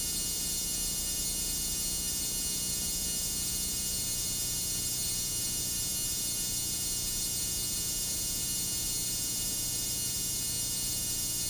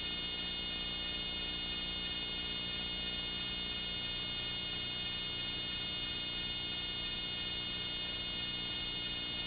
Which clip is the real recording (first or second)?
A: second